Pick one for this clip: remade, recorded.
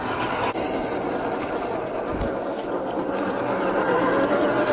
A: recorded